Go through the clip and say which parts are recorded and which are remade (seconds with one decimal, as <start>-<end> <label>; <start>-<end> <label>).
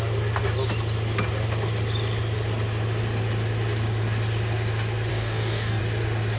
0.0-5.1 recorded; 5.1-5.8 remade; 5.8-6.4 recorded